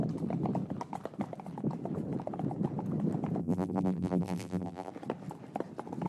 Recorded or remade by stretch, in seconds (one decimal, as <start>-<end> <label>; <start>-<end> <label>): 0.0-3.4 recorded; 3.4-4.9 remade; 4.9-6.1 recorded